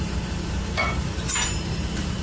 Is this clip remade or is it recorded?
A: remade